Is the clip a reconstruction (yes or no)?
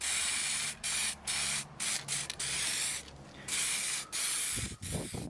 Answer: no